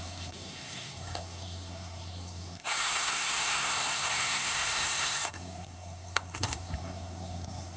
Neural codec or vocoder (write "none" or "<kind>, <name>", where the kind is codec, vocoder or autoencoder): codec, SNAC